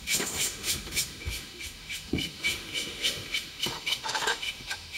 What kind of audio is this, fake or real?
fake